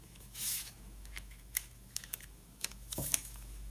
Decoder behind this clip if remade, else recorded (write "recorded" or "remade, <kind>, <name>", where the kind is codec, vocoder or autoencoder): remade, autoencoder, DAC-VAE